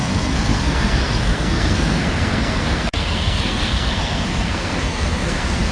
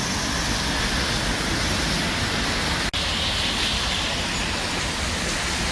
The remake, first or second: first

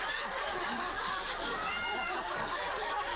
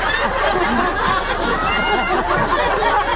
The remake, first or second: first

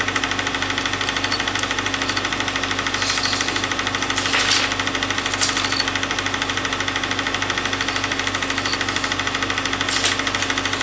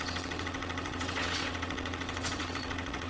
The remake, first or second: second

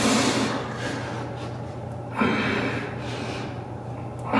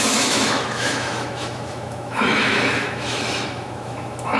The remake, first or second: second